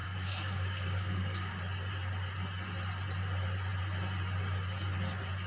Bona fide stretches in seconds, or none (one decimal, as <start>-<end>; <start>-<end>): 1.6-5.5